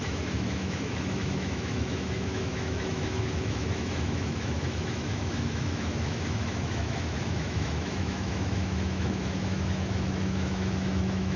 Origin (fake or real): fake